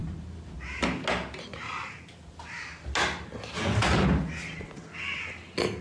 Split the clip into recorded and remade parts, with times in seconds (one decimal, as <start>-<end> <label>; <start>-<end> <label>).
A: 0.0-5.8 recorded